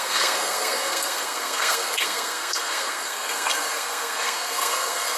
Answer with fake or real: fake